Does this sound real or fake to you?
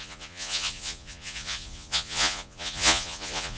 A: fake